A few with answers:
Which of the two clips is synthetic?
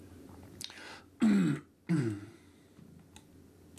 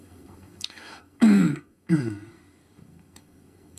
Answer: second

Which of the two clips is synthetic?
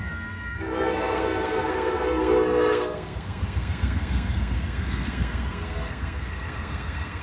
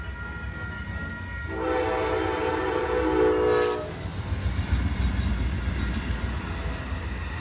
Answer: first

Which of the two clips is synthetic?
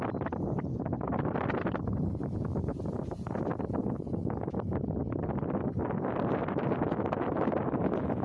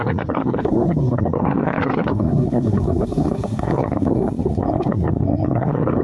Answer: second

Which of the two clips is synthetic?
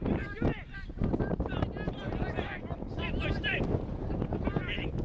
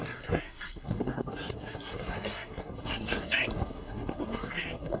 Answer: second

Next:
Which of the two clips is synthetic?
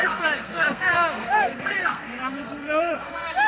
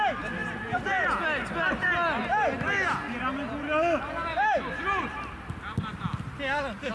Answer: first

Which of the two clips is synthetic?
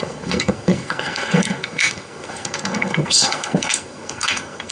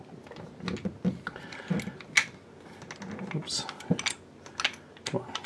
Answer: first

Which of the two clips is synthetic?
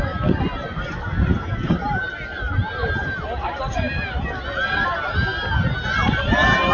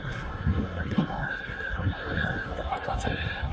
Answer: second